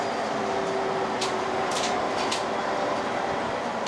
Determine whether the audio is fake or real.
real